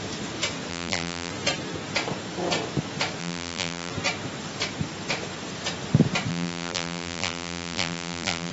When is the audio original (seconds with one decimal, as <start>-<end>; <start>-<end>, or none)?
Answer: 0.0-0.7; 1.3-3.2; 3.9-6.3